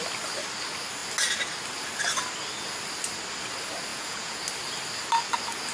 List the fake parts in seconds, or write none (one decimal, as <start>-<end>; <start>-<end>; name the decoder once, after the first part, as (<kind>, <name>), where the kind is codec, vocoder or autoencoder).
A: 3.9-4.4 (vocoder, Vocos)